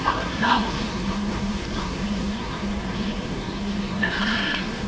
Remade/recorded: remade